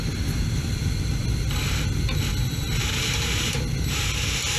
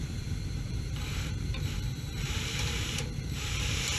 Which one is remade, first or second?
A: second